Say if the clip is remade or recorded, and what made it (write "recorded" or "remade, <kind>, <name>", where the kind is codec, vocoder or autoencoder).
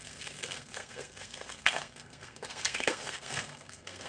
remade, codec, SNAC